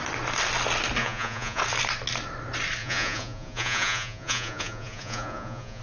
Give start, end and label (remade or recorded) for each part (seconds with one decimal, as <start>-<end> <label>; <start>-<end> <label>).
0.0-1.0 recorded; 1.0-1.6 remade; 1.6-2.8 recorded; 2.8-5.8 remade

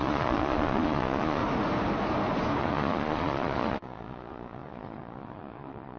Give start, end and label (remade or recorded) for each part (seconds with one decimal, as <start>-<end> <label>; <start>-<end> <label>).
0.0-1.4 remade; 1.4-2.6 recorded; 2.6-6.0 remade

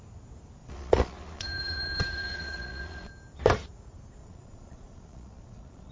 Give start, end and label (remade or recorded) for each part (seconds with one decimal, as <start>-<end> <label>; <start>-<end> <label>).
0.0-0.6 recorded; 0.6-3.1 remade; 3.1-4.2 recorded; 4.2-5.9 remade